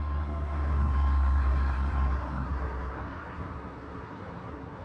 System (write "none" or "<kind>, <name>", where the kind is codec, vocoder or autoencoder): codec, SNAC